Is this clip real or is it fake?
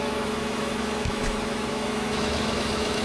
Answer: fake